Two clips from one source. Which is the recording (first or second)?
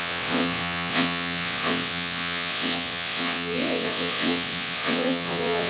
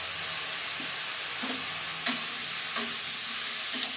second